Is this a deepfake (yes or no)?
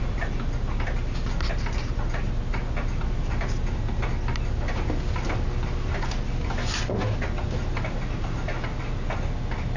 no